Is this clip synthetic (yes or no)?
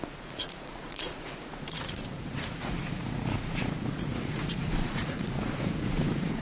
yes